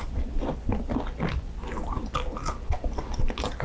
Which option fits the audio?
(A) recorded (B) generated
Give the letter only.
A